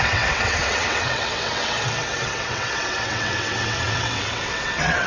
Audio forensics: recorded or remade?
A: remade